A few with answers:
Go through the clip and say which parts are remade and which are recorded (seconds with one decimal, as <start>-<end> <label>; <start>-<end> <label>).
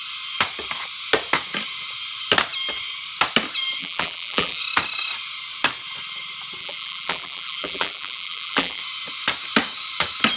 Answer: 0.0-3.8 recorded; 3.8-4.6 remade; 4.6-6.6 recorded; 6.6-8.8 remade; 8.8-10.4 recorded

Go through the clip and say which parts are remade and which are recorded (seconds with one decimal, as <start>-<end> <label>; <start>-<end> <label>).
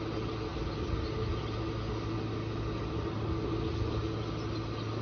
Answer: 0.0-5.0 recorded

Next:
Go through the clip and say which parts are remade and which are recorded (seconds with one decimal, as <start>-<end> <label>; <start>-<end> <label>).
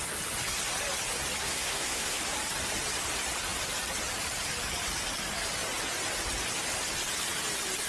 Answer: 0.0-1.4 recorded; 1.4-2.2 remade; 2.2-7.9 recorded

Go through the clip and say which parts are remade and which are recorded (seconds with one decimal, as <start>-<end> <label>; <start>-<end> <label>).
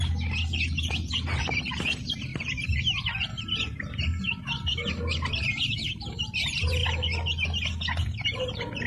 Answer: 0.0-8.9 recorded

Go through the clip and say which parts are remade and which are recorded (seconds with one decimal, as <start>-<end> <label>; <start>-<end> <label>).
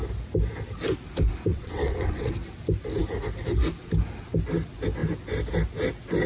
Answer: 0.0-1.5 recorded; 1.5-2.3 remade; 2.3-6.3 recorded